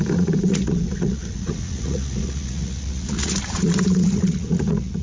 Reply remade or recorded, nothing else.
remade